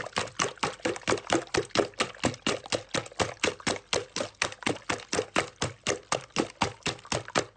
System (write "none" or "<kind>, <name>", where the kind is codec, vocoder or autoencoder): none